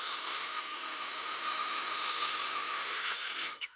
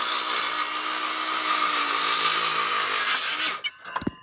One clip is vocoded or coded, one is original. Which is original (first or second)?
second